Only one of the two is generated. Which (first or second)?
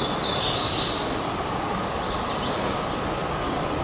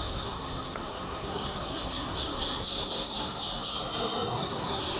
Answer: second